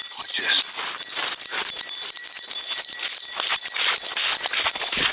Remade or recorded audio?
recorded